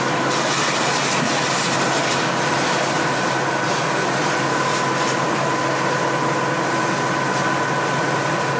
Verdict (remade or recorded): recorded